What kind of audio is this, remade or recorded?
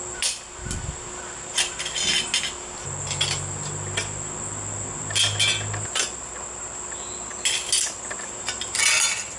recorded